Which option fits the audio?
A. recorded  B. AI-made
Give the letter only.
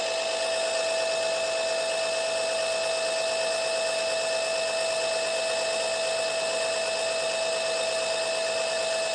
A